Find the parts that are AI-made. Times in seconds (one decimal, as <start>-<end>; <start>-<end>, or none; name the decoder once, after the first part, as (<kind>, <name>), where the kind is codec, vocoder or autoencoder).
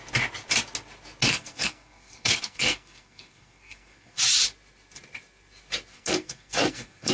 1.3-4.2 (codec, SNAC); 5.9-7.1